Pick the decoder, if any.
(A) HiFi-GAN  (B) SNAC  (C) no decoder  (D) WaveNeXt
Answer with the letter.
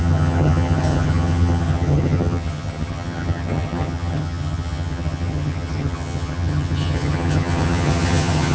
A